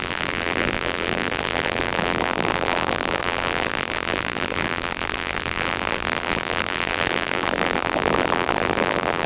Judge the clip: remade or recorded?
remade